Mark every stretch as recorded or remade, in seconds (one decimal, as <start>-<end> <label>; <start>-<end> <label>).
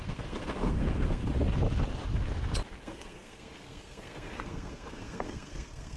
0.0-1.2 remade; 1.2-2.8 recorded; 2.8-6.0 remade